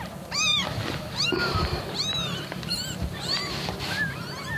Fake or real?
fake